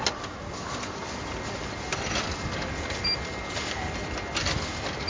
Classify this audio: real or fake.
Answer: real